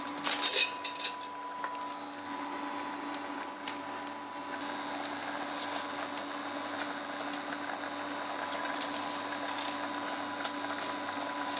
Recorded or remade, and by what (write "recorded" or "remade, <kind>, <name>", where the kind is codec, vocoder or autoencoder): recorded